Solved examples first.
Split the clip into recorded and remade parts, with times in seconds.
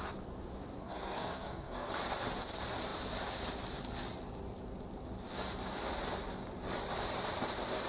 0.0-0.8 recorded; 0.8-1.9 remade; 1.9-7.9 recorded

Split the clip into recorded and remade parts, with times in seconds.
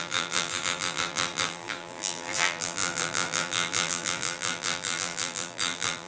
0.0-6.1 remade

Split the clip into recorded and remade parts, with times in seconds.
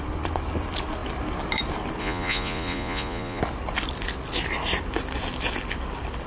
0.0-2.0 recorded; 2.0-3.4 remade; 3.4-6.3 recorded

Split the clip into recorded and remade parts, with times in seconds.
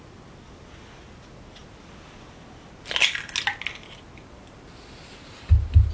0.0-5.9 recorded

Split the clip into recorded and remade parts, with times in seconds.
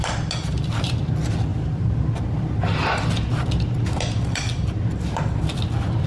0.0-1.5 recorded; 1.5-5.2 remade; 5.2-6.1 recorded